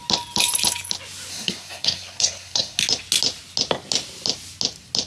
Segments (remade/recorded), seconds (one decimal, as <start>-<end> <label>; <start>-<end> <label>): 0.0-1.3 recorded; 1.3-2.8 remade; 2.8-5.1 recorded